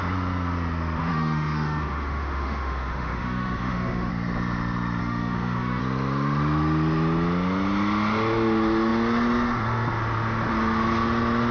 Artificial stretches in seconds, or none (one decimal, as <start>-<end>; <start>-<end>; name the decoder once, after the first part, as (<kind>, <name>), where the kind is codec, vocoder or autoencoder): 1.0-4.1 (autoencoder, DAC-VAE); 5.0-5.8